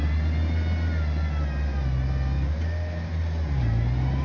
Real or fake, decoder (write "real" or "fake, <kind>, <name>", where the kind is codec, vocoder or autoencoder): real